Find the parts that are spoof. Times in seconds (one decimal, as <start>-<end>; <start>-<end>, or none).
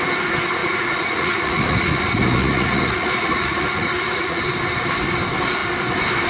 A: 0.6-4.4